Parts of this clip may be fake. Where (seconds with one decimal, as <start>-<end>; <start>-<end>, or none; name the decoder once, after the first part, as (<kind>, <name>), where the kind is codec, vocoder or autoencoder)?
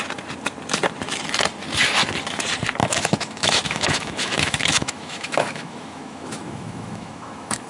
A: 2.8-7.7 (autoencoder, DAC-VAE)